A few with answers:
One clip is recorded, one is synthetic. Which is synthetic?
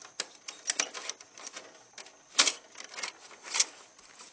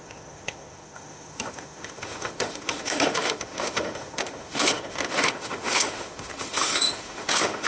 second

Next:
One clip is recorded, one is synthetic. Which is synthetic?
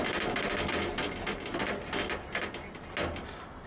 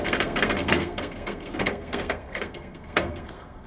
second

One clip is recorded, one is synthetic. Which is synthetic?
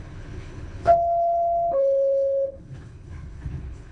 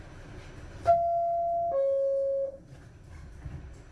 first